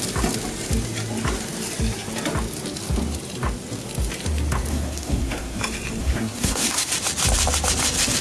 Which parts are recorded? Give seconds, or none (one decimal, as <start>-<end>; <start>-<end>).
0.0-4.7; 5.6-6.0; 6.9-8.2